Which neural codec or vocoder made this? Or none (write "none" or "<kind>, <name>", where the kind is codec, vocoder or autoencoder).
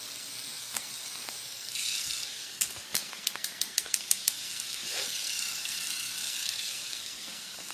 codec, SNAC